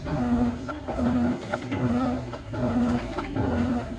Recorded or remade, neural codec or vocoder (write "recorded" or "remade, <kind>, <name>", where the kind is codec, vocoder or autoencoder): remade, codec, SNAC